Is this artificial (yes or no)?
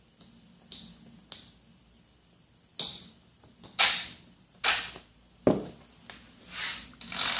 no